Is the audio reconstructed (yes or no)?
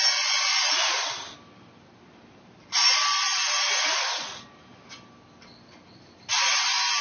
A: no